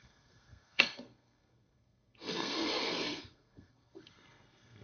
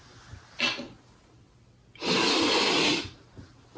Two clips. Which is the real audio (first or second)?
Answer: second